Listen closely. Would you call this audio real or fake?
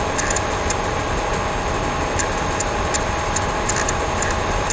real